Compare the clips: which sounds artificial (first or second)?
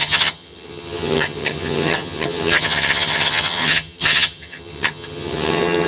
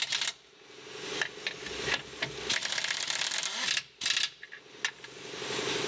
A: first